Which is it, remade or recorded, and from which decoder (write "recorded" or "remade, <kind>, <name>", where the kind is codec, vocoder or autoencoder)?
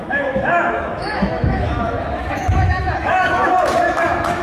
remade, autoencoder, DAC-VAE